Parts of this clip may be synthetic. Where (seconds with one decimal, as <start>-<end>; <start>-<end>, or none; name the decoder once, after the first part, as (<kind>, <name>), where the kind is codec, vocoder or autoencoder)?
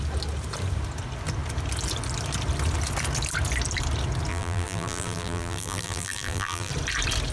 4.3-6.7 (vocoder, BigVGAN v2)